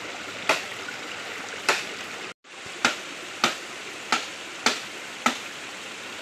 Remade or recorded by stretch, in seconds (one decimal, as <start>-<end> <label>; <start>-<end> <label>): 0.0-6.2 recorded